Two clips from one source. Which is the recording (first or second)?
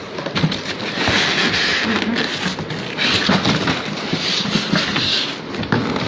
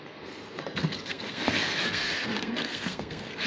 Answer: first